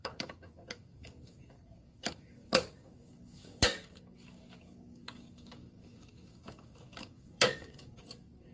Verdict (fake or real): fake